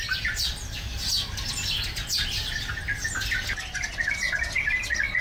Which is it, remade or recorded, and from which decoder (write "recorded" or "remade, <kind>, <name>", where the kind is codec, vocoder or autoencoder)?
recorded